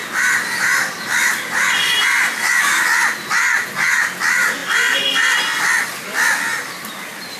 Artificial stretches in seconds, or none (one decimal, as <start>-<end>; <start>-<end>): none